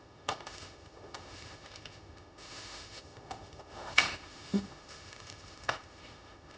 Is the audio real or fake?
fake